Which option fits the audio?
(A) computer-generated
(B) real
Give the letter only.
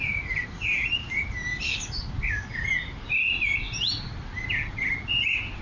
B